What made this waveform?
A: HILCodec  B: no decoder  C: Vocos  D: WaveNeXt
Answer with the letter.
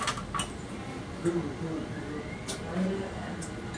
B